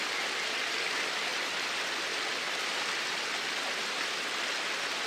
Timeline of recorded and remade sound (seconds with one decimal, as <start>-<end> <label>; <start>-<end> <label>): 0.0-5.1 recorded

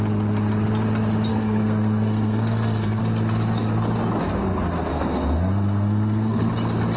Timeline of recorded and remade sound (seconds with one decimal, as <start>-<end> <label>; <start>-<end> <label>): 0.0-1.3 recorded; 1.3-3.0 remade; 3.0-4.9 recorded; 4.9-6.5 remade; 6.5-7.0 recorded